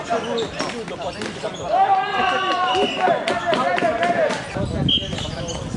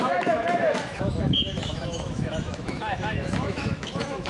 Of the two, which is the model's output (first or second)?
second